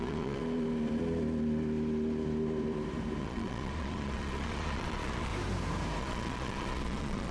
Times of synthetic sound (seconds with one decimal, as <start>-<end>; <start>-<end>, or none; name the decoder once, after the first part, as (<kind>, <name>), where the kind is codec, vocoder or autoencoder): 0.0-0.4 (vocoder, Vocos); 3.2-5.3; 6.0-7.3